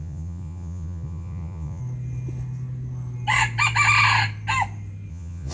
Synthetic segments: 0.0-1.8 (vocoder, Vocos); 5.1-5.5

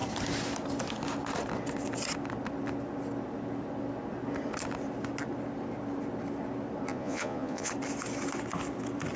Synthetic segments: 6.9-7.7 (vocoder, Vocos)

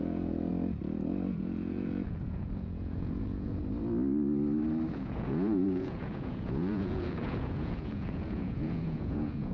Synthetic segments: 0.0-0.5 (vocoder, Vocos); 1.3-3.6; 4.9-9.5

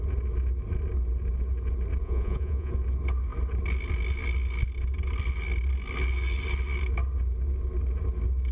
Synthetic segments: 2.0-2.7 (vocoder, Vocos)

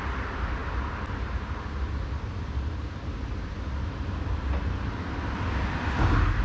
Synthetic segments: none

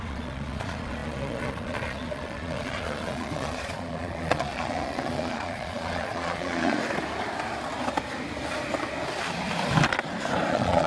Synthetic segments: 0.0-6.8 (vocoder, Vocos); 10.5-10.9

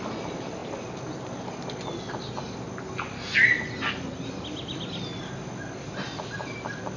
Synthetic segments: none

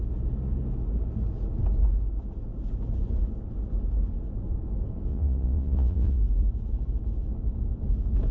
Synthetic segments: 5.1-6.2 (vocoder, Vocos)